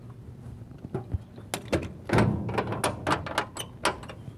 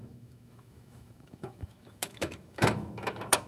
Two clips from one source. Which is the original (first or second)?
first